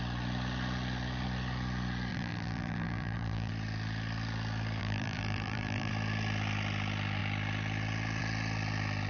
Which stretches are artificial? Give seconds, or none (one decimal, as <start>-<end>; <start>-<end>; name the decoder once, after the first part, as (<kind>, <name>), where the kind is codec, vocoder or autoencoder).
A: 2.1-3.5 (vocoder, BigVGAN v2); 4.8-5.9